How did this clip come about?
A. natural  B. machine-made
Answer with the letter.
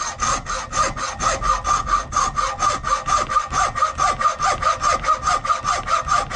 A